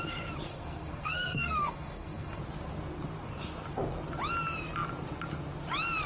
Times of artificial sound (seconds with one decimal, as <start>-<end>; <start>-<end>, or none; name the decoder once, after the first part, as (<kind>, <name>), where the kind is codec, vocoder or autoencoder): 0.5-2.4 (codec, SNAC)